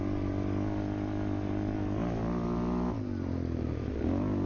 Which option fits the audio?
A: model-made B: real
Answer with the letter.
B